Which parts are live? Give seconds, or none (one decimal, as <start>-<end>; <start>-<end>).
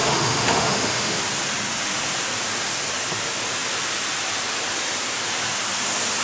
1.2-6.2